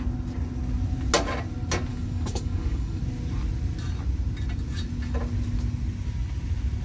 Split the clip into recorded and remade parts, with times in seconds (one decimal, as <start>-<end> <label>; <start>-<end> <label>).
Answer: 0.0-1.9 recorded; 1.9-3.0 remade; 3.0-6.8 recorded